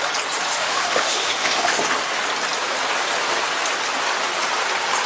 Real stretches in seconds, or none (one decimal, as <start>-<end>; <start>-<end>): 0.0-0.5; 1.8-5.1